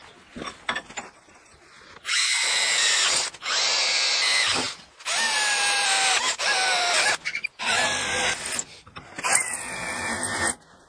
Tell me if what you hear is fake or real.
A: real